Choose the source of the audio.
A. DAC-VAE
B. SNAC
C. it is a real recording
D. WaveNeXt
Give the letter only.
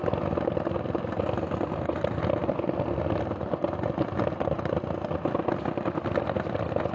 C